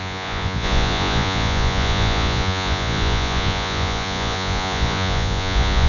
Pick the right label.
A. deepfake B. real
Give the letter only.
A